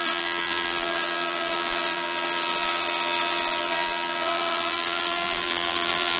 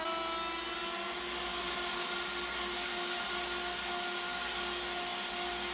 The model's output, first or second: first